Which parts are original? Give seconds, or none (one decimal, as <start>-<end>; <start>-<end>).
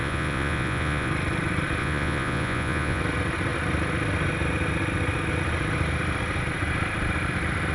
1.1-1.8; 3.0-7.7